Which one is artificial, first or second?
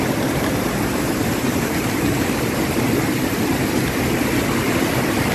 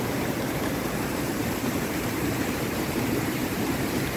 second